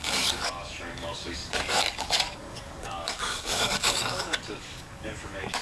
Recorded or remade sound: remade